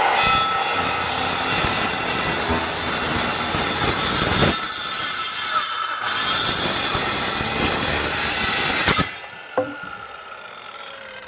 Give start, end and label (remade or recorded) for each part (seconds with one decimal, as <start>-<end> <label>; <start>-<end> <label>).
0.0-4.3 remade; 4.3-8.2 recorded; 8.2-11.3 remade